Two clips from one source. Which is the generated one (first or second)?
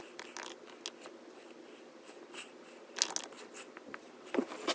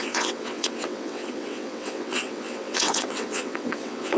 second